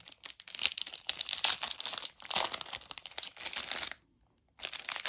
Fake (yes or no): no